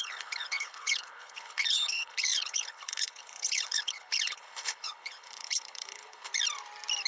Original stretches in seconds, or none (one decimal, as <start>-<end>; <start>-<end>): 6.3-7.1